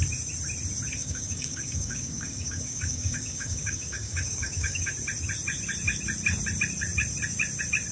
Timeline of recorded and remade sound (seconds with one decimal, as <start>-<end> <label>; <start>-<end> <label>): 0.0-1.0 recorded; 1.0-4.9 remade; 4.9-7.9 recorded